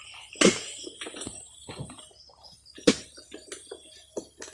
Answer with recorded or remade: recorded